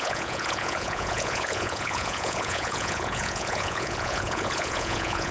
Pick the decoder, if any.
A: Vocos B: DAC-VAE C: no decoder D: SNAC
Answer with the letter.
A